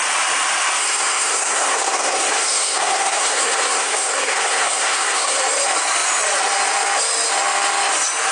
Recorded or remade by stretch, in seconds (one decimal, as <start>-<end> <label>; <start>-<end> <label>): 0.0-0.8 recorded; 0.8-5.4 remade; 5.4-8.3 recorded